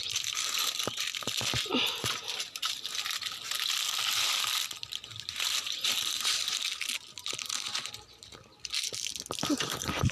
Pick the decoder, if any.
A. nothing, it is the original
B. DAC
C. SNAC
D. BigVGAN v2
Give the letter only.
A